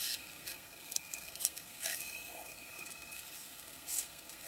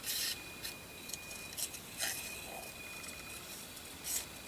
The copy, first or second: first